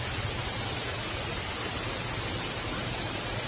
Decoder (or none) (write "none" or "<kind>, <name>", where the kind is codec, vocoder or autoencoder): none